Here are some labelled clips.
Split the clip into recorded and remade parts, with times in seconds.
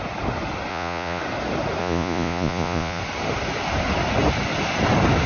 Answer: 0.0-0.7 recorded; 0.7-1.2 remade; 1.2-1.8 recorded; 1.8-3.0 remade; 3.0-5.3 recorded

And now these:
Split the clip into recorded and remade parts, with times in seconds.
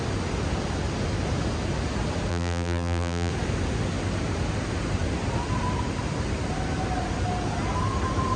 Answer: 0.0-2.3 recorded; 2.3-3.3 remade; 3.3-8.4 recorded